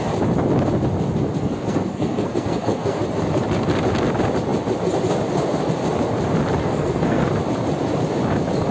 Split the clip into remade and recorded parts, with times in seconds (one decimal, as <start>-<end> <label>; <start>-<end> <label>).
0.0-1.3 recorded; 1.3-3.0 remade; 3.0-6.6 recorded; 6.6-7.3 remade; 7.3-8.7 recorded